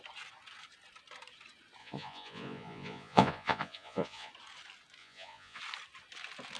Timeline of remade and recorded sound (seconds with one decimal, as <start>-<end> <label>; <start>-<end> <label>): 0.0-1.8 recorded; 1.8-4.3 remade; 4.3-5.0 recorded; 5.0-5.6 remade; 5.6-6.6 recorded

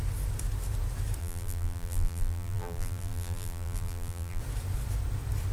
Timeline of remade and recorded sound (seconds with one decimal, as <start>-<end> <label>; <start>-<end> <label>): 0.0-1.2 recorded; 1.2-4.4 remade; 4.4-5.5 recorded

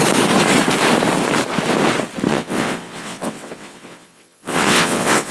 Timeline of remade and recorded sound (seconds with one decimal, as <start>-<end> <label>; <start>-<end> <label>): 0.0-2.3 recorded; 2.3-5.3 remade

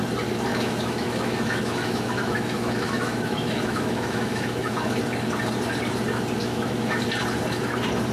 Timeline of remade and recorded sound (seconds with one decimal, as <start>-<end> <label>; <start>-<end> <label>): 0.0-0.5 recorded; 0.5-5.0 remade; 5.0-6.4 recorded; 6.4-7.0 remade; 7.0-8.1 recorded